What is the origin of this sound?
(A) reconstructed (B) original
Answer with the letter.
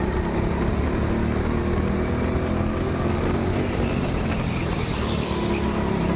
B